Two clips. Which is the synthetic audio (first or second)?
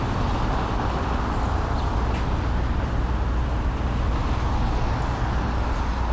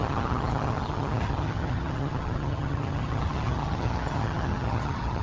second